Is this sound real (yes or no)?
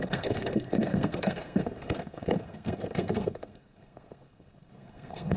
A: no